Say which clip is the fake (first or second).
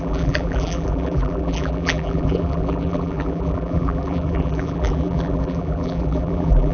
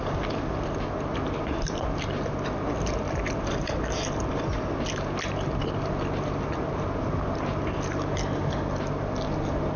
first